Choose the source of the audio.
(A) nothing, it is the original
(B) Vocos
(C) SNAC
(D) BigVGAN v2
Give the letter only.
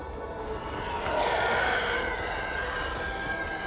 A